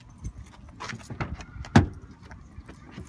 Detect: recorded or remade recorded